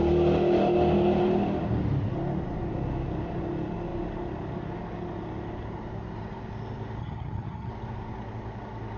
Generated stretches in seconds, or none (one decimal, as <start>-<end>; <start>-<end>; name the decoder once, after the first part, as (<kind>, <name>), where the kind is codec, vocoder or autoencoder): 7.0-7.7 (vocoder, HiFi-GAN)